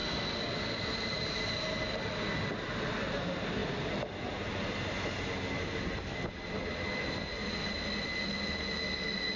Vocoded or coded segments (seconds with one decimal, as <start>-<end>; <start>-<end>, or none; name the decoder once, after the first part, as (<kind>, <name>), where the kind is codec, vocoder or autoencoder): none